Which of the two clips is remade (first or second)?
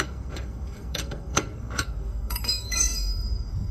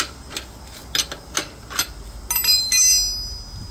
first